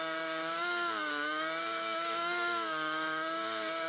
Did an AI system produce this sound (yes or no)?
yes